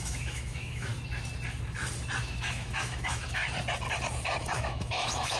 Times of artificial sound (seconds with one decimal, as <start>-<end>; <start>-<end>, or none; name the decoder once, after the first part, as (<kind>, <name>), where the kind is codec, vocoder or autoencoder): 0.0-0.9 (autoencoder, DAC-VAE); 2.2-3.4; 4.4-5.4